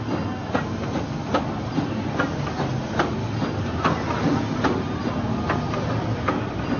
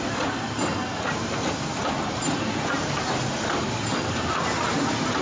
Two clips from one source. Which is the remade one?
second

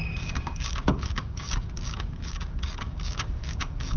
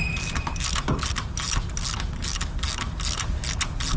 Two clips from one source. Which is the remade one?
first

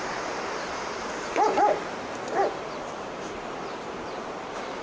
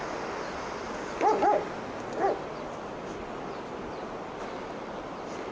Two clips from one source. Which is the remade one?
first